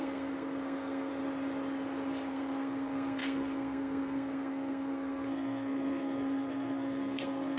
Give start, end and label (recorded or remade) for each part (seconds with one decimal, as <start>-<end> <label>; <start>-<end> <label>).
0.0-1.1 remade; 1.1-2.3 recorded; 2.3-7.6 remade

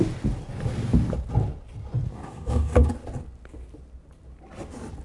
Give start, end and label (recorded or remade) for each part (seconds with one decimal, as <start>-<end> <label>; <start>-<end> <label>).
0.0-2.1 recorded; 2.1-2.9 remade; 2.9-5.0 recorded

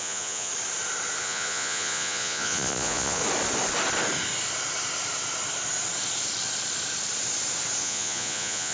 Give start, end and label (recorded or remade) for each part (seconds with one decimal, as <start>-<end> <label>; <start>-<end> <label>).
0.0-0.5 remade; 0.5-1.2 recorded; 1.2-3.2 remade; 3.2-7.8 recorded; 7.8-8.7 remade

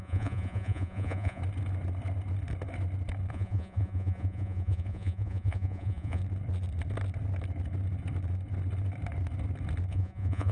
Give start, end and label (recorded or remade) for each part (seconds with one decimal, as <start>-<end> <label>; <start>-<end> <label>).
0.0-1.4 remade; 1.4-3.3 recorded; 3.3-6.2 remade; 6.2-9.9 recorded; 9.9-10.5 remade

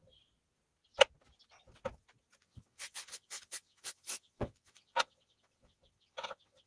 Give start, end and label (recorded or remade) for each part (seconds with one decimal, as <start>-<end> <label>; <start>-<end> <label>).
0.0-2.4 recorded; 2.4-6.7 remade